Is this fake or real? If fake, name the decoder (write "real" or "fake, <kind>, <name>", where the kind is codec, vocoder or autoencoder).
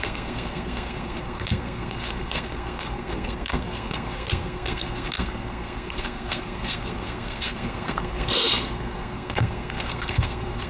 fake, codec, SNAC